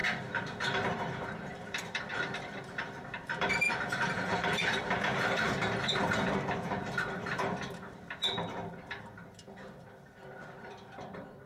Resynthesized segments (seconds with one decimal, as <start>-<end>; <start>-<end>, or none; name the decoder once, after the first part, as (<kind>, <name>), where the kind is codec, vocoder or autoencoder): 0.0-11.5 (vocoder, BigVGAN v2)